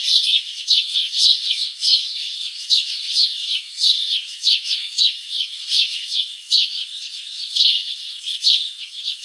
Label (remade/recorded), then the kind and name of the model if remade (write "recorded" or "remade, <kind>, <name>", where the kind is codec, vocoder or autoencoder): remade, codec, SNAC